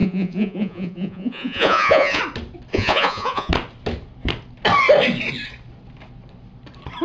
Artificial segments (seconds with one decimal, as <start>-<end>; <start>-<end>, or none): 0.0-2.2; 2.7-3.5